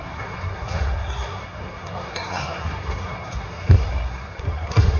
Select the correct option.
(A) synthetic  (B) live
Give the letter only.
A